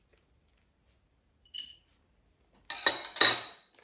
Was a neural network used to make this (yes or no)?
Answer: no